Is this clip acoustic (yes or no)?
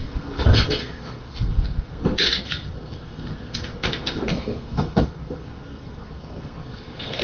no